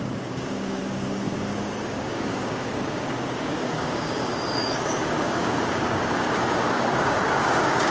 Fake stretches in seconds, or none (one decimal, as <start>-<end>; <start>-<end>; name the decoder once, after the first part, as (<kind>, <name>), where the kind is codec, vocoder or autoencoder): 0.0-7.9 (codec, DAC)